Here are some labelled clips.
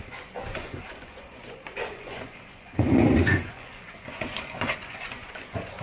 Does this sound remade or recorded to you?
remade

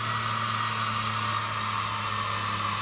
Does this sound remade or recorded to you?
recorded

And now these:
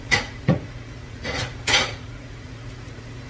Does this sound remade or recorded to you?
remade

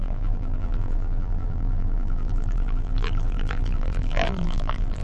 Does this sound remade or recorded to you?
remade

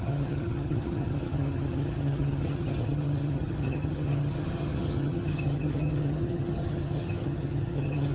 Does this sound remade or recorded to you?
remade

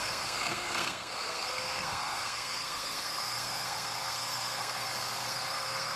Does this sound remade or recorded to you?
remade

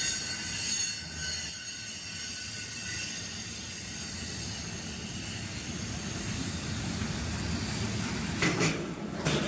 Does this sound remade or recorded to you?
recorded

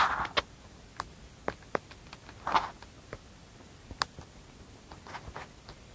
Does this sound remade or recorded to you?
recorded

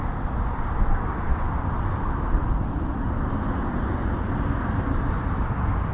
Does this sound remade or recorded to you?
recorded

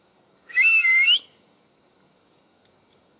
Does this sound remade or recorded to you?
remade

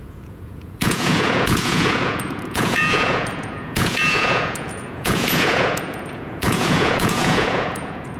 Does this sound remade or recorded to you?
remade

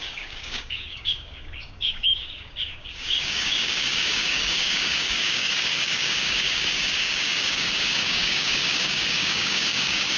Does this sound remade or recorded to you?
remade